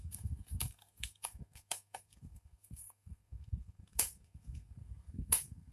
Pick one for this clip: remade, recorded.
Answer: remade